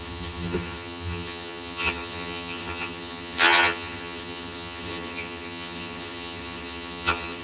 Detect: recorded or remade remade